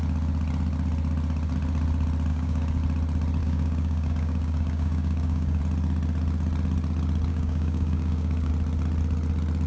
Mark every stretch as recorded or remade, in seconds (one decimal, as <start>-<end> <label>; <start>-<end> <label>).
0.0-2.3 recorded; 2.3-2.8 remade; 2.8-3.4 recorded; 3.4-5.6 remade; 5.6-7.3 recorded; 7.3-8.5 remade; 8.5-9.7 recorded